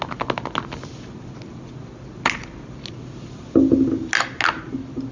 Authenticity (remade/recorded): recorded